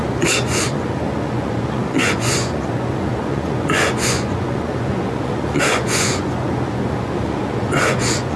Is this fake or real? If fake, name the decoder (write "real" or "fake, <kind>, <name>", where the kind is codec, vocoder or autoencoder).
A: fake, vocoder, Vocos